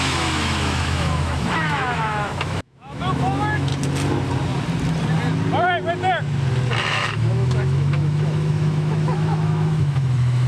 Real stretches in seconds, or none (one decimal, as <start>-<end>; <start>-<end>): 3.7-6.8